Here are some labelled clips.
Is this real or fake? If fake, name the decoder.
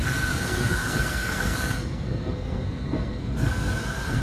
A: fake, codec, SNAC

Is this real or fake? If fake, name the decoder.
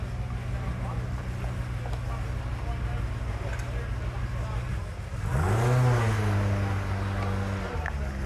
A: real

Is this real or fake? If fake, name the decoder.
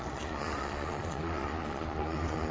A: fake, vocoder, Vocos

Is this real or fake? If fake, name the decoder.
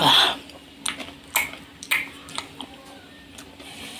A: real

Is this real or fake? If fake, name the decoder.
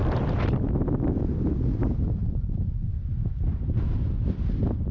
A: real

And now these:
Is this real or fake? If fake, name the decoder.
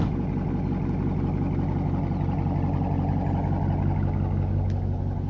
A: real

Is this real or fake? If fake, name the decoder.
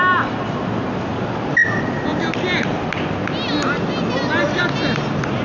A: real